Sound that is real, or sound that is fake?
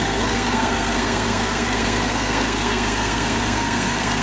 fake